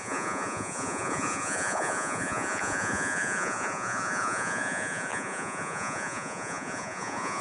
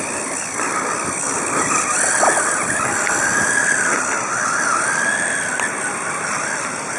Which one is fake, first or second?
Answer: first